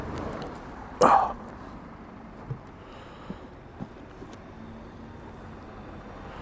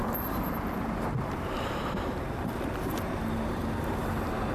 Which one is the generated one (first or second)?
second